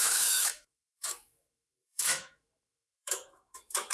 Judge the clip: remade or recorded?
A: remade